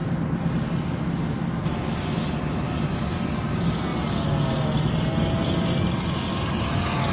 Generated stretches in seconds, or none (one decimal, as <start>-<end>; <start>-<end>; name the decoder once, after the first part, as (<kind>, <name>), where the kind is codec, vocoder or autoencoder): none